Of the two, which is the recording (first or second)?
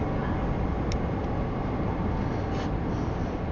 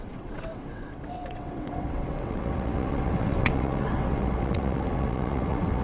first